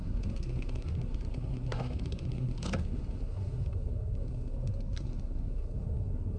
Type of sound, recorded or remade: remade